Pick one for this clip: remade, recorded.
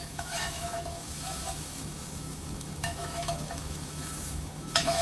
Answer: remade